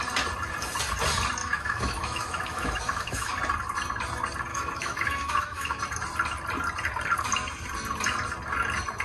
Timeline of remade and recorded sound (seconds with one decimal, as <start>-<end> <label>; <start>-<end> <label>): 0.0-1.4 recorded; 1.4-3.4 remade; 3.4-4.5 recorded; 4.5-5.8 remade; 5.8-9.0 recorded